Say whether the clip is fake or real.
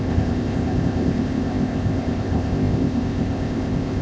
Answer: fake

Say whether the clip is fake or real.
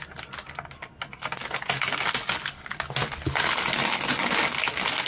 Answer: real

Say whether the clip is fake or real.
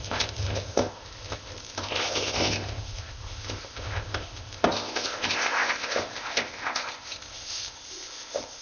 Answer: fake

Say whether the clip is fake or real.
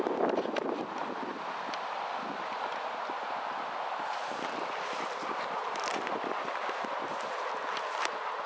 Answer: real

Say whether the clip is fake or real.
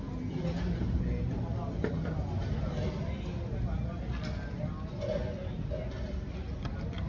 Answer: real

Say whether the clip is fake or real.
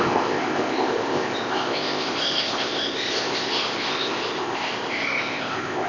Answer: fake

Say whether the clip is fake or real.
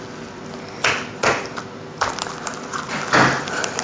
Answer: real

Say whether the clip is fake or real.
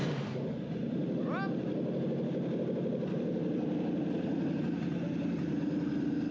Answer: real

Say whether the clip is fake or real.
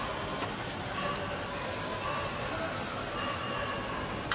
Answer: real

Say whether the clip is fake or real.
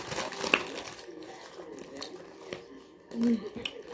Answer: real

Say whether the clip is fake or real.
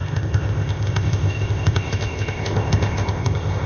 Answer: fake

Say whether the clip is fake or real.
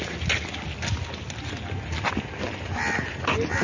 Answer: real